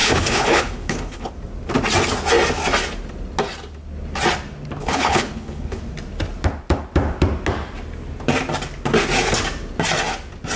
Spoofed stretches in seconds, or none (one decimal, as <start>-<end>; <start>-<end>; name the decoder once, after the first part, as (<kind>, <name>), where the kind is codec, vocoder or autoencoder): 0.0-1.3 (codec, HILCodec); 4.8-5.8